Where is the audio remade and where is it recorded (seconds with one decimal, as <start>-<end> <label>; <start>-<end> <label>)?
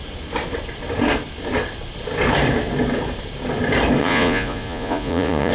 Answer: 0.0-4.0 recorded; 4.0-5.5 remade